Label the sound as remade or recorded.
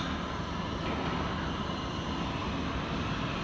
recorded